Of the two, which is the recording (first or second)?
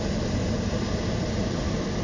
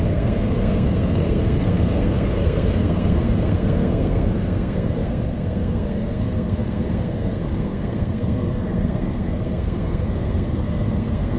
first